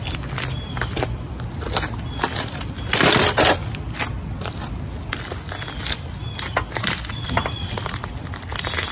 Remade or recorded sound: recorded